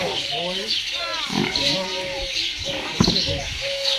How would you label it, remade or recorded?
remade